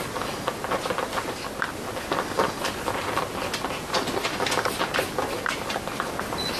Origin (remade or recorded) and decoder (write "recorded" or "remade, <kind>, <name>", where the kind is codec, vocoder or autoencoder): recorded